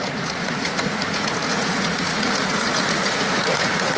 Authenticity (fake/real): fake